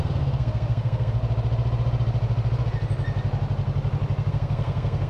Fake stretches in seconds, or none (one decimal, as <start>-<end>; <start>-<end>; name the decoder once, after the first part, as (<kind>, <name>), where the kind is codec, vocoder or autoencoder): 0.0-1.2 (codec, SNAC); 4.3-5.1